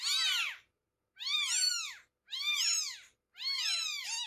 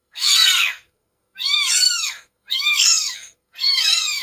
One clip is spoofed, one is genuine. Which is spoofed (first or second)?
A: second